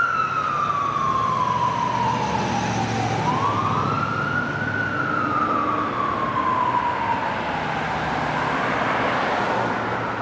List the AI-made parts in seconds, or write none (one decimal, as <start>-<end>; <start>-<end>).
none